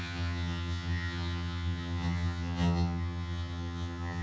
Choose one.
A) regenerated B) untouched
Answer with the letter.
A